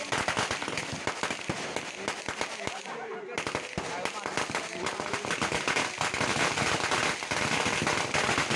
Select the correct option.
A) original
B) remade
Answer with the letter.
A